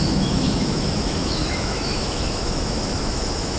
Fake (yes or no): yes